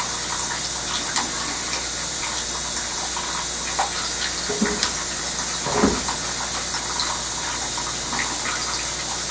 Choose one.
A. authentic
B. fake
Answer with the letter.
A